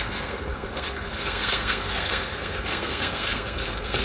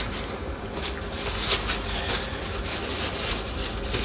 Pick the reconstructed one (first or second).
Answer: first